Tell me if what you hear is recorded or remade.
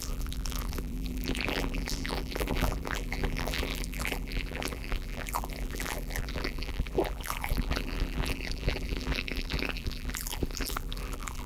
remade